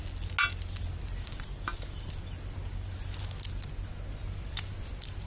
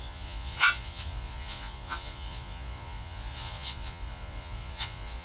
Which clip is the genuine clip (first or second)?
first